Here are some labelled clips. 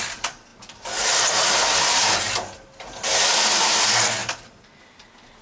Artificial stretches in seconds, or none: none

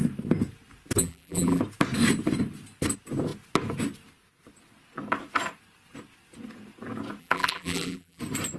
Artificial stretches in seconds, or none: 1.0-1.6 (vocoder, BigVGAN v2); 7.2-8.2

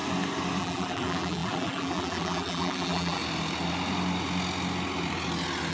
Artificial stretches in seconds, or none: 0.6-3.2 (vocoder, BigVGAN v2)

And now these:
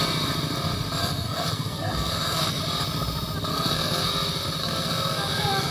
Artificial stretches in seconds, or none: 1.0-2.6 (codec, SNAC); 3.5-4.1; 4.6-5.7

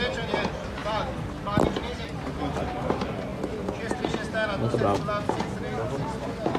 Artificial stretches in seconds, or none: none